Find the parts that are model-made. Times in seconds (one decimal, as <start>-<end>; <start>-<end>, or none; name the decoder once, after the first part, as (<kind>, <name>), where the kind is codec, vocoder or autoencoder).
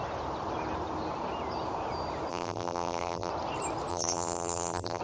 2.3-3.3 (vocoder, BigVGAN v2); 3.9-5.0